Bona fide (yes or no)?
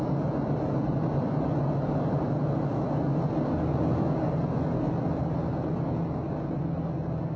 yes